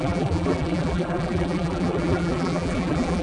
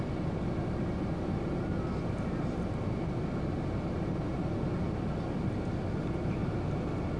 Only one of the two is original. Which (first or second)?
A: second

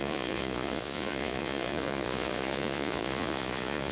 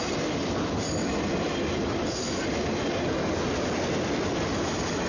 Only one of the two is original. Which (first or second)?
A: second